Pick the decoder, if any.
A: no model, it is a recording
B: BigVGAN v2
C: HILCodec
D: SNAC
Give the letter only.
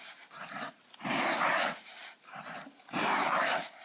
A